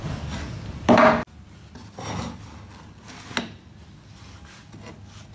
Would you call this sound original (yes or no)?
yes